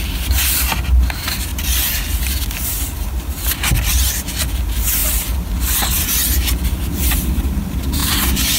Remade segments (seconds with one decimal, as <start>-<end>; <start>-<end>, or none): 1.5-3.0; 8.0-8.6